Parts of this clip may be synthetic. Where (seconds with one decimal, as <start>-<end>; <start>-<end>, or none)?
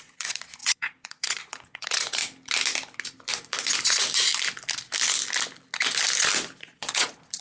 0.0-2.2; 6.6-7.4